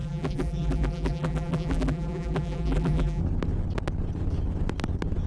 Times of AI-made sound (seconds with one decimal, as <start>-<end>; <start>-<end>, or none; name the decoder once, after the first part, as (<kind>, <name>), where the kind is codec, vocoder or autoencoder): 0.0-3.2 (vocoder, BigVGAN v2)